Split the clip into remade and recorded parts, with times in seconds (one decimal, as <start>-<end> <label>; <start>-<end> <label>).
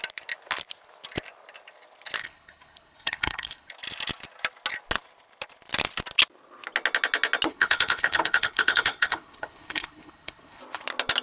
0.0-2.2 recorded; 2.2-3.7 remade; 3.7-7.5 recorded; 7.5-10.6 remade; 10.6-11.2 recorded